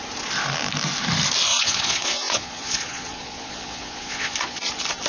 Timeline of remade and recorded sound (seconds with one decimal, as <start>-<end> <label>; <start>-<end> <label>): 0.0-1.5 recorded; 1.5-4.6 remade; 4.6-5.1 recorded